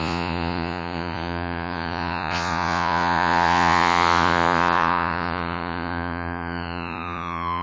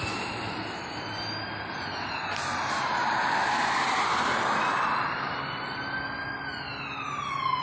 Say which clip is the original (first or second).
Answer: second